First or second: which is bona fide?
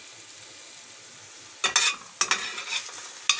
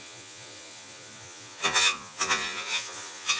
first